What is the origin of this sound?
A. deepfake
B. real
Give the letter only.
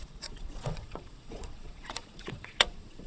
A